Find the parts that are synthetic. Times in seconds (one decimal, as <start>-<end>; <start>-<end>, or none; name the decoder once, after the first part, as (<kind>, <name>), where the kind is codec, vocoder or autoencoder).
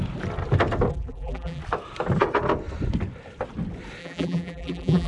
0.9-1.6 (vocoder, BigVGAN v2); 4.0-5.1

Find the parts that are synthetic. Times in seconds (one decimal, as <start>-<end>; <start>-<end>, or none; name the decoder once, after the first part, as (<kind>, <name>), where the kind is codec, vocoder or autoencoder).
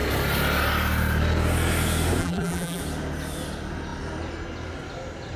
2.2-2.8 (vocoder, BigVGAN v2)